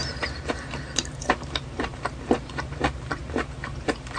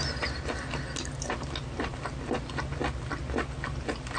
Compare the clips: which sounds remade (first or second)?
first